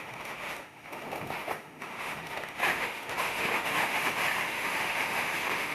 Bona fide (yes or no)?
no